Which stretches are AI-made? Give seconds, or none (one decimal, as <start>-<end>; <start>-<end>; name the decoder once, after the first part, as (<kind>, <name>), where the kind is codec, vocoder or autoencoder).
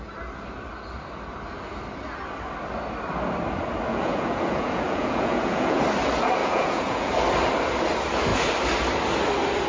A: 3.9-5.8 (vocoder, Vocos); 6.4-7.1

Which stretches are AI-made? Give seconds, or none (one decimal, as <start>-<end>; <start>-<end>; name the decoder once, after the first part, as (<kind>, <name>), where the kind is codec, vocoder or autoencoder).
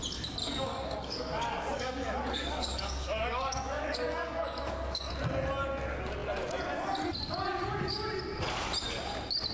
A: 0.4-5.1 (codec, DAC)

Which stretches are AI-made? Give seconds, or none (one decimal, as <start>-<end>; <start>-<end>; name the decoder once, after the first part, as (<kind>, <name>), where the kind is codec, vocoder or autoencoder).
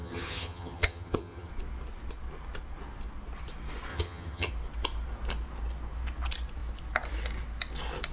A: 0.0-1.5 (vocoder, HiFi-GAN); 3.9-4.5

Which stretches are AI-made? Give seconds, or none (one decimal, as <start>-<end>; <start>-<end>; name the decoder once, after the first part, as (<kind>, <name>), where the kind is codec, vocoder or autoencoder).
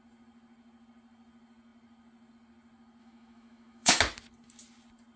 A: 3.0-4.0 (autoencoder, DAC-VAE)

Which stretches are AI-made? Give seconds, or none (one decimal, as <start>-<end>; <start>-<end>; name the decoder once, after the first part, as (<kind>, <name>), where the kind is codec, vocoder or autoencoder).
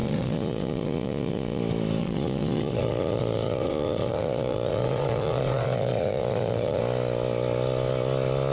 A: 0.0-1.6 (vocoder, Vocos); 2.0-6.8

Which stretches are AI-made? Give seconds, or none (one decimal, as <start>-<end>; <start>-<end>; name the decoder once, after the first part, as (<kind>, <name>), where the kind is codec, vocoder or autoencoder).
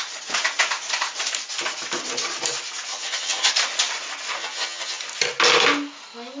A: 2.9-3.5 (vocoder, HiFi-GAN); 4.4-5.0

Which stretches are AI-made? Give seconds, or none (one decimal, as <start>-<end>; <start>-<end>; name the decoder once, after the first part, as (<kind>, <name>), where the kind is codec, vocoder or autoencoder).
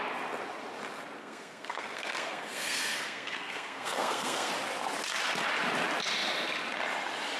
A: 1.2-4.5 (codec, SNAC)